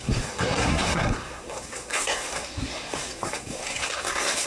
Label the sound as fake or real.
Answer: fake